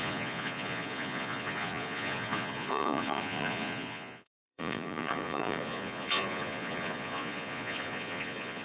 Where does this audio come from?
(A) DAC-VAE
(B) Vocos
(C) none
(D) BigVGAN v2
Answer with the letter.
B